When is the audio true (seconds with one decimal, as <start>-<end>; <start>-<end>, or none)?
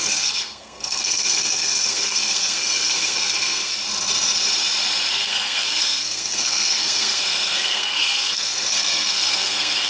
3.7-5.1